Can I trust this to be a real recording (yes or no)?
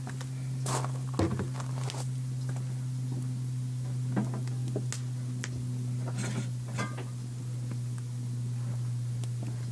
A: yes